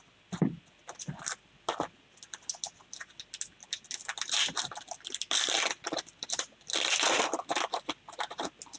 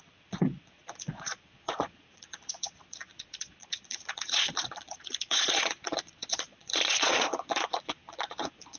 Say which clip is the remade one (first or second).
second